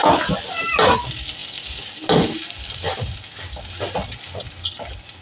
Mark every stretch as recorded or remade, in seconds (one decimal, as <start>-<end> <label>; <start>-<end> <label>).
0.0-5.2 recorded